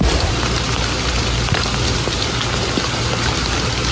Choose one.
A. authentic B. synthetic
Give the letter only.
A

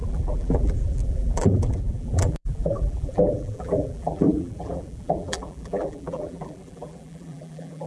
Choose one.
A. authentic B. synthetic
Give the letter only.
B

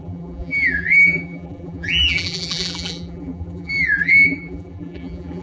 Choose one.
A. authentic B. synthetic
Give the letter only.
B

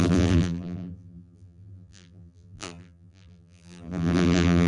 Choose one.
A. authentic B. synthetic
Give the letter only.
B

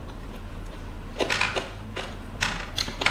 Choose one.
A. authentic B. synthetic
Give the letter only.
A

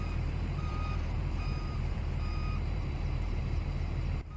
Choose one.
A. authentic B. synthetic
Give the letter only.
B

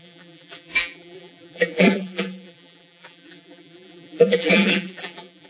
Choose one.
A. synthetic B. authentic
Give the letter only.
A